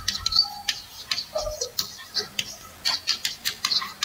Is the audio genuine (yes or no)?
yes